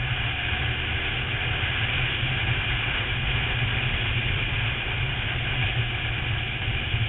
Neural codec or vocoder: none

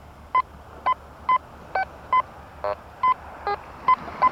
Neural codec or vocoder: none